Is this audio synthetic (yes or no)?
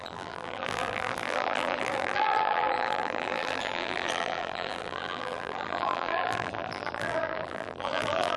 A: yes